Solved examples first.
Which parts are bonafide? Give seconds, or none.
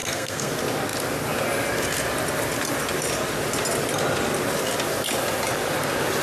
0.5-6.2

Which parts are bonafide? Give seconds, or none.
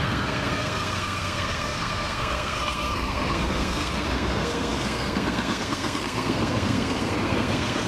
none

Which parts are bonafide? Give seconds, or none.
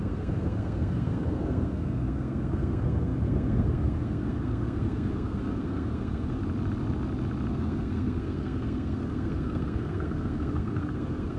6.4-7.5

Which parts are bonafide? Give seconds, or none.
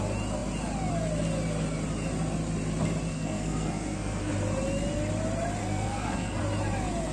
0.0-3.1; 4.3-5.6; 6.4-7.1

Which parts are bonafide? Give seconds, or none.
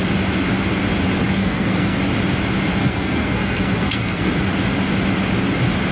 0.0-1.4; 2.0-2.8; 4.3-5.9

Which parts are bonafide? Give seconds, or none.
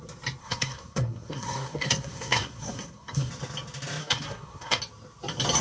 0.0-0.4; 3.3-4.0; 4.8-5.6